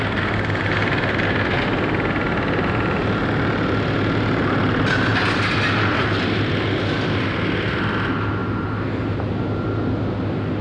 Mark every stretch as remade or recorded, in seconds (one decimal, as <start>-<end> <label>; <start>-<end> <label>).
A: 0.0-10.6 recorded